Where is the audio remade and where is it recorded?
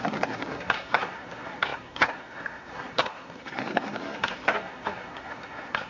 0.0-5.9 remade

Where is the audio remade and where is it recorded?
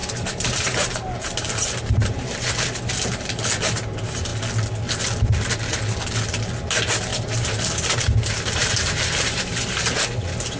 0.0-2.5 remade; 2.5-7.1 recorded; 7.1-10.0 remade; 10.0-10.6 recorded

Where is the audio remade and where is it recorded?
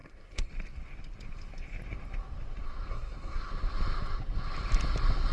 0.0-0.5 remade; 0.5-2.9 recorded; 2.9-3.5 remade; 3.5-5.3 recorded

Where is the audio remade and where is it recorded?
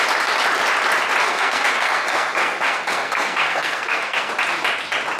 0.0-1.2 recorded; 1.2-4.3 remade; 4.3-5.2 recorded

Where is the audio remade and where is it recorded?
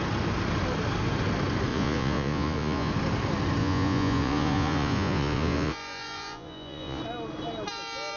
0.0-1.7 recorded; 1.7-2.9 remade; 2.9-3.6 recorded; 3.6-7.0 remade; 7.0-8.2 recorded